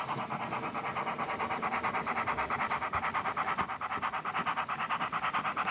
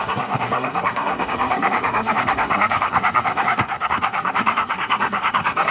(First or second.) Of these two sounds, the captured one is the first